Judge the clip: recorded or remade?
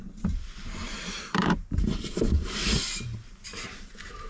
remade